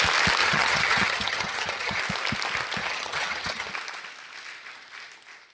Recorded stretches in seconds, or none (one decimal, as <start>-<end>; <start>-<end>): 0.0-0.4; 2.0-2.8; 3.7-5.5